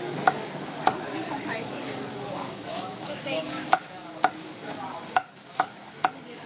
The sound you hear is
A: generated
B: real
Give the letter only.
A